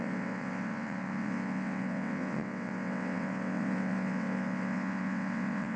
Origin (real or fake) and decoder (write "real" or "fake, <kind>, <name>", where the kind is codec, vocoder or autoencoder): fake, vocoder, WaveNeXt